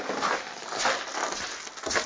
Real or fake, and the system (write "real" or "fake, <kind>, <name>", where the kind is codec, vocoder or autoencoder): real